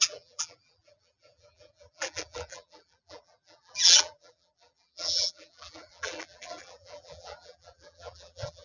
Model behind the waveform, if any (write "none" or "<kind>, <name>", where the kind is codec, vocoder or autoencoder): vocoder, BigVGAN v2